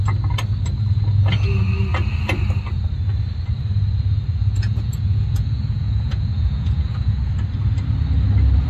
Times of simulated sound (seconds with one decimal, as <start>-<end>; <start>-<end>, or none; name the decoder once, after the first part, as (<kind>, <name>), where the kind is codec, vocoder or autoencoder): 4.4-7.3 (vocoder, Vocos)